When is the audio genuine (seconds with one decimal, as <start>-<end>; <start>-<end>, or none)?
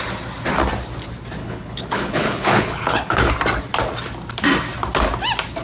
0.0-1.4; 3.3-5.6